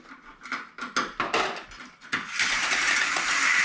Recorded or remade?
recorded